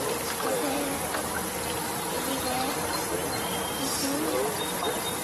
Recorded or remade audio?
remade